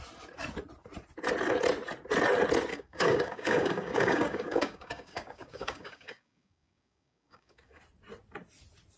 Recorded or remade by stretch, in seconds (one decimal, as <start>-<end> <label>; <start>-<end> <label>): 0.0-2.7 recorded; 2.7-7.8 remade; 7.8-9.0 recorded